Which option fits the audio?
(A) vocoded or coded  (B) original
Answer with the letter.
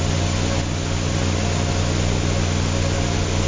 B